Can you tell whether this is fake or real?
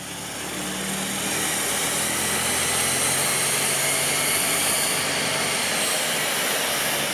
real